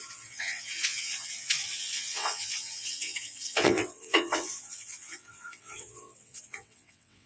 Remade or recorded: remade